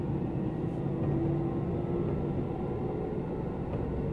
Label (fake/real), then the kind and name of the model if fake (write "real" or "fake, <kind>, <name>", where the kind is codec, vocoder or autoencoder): real